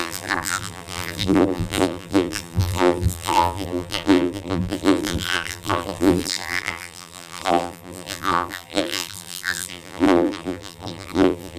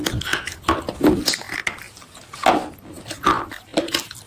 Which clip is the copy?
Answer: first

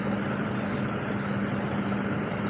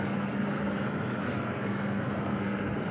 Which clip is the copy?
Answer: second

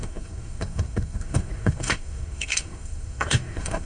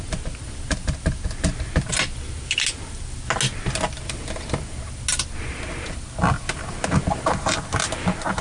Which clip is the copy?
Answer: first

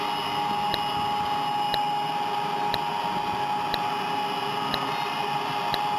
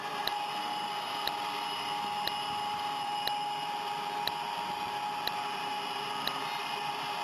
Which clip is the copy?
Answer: second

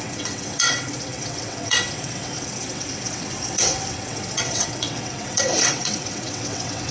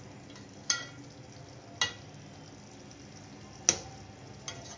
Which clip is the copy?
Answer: first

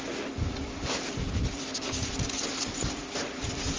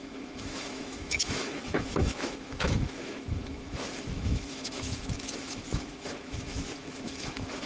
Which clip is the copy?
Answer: second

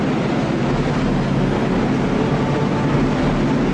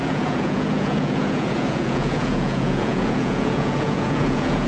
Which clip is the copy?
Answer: second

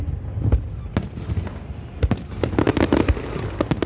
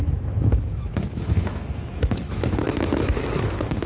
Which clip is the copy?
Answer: second